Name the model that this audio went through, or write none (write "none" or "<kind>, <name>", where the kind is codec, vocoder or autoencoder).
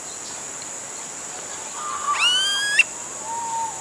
none